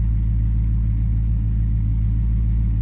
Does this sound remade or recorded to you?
recorded